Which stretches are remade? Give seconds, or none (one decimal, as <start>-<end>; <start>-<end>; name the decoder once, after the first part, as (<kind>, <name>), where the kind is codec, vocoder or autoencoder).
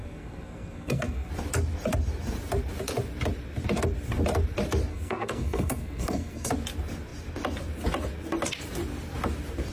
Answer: 0.0-1.3 (codec, SNAC); 4.9-6.5